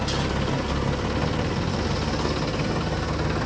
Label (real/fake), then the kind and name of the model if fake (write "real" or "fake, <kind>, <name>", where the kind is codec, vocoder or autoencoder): real